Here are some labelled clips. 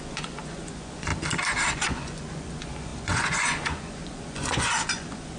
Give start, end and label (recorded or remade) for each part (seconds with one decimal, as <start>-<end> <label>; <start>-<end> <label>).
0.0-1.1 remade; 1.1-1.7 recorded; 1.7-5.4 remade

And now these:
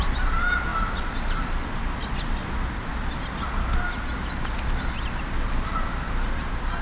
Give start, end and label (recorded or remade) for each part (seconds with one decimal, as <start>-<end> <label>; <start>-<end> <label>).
0.0-6.8 recorded

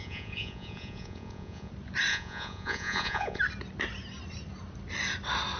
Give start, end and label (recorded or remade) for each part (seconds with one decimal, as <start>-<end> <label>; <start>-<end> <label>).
0.0-1.7 remade; 1.7-2.1 recorded; 2.1-3.4 remade; 3.4-5.6 recorded

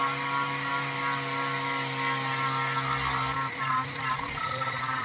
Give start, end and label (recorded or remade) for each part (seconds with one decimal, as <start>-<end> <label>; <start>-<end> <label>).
0.0-5.0 recorded

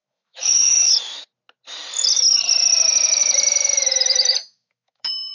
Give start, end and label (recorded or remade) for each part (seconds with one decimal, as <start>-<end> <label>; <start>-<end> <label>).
0.0-0.9 remade; 0.9-4.4 recorded; 4.4-5.3 remade

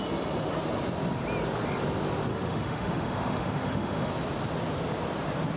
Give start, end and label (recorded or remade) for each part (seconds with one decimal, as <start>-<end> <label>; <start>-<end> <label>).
0.0-2.3 recorded; 2.3-4.1 remade; 4.1-5.6 recorded

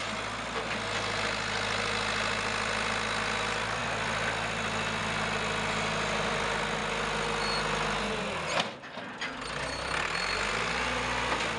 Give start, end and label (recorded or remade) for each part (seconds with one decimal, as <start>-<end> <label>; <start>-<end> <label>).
0.0-11.6 recorded